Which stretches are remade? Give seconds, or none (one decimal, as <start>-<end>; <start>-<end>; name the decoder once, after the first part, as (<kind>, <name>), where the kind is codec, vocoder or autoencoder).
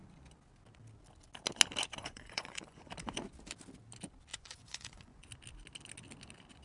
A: 2.0-2.9 (vocoder, Vocos); 4.3-5.3